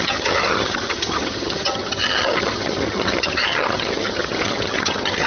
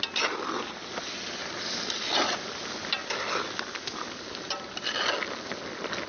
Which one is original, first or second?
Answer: second